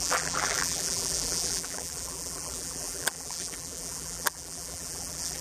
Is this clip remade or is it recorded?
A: remade